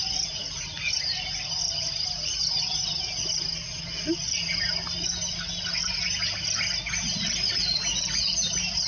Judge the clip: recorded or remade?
recorded